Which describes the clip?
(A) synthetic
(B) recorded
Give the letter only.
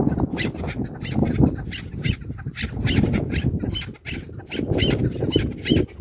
B